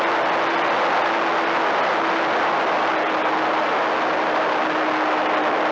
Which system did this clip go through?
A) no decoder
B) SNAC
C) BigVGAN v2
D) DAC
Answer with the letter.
A